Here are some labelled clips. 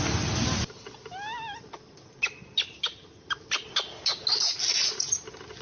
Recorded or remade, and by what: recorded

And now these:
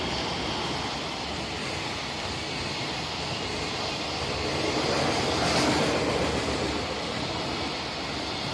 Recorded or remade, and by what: recorded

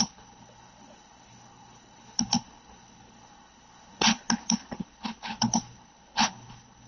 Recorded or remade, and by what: remade, codec, HILCodec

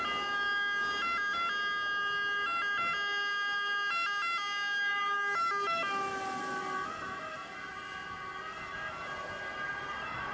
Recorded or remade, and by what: recorded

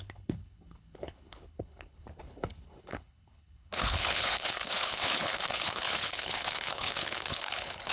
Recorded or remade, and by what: remade, codec, HILCodec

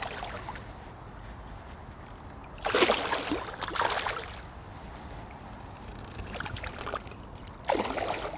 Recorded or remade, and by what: recorded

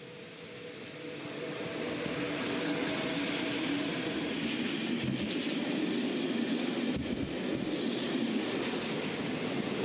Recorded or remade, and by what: recorded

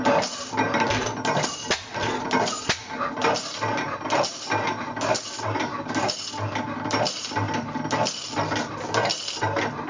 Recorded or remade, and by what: recorded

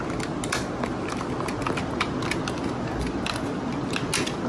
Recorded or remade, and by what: recorded